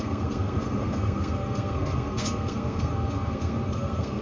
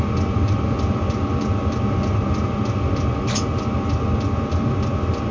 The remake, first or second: first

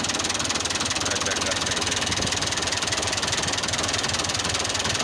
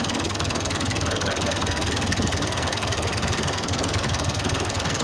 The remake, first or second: second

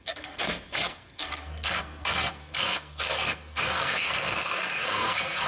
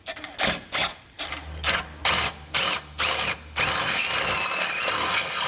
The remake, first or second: first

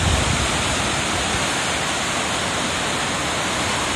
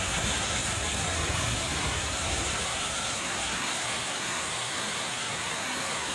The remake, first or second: second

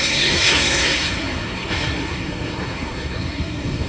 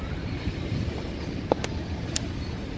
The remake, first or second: first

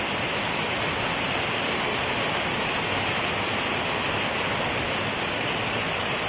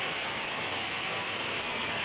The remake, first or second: second